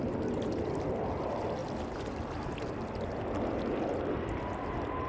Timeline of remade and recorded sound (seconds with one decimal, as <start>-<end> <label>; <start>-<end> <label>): 0.0-5.1 recorded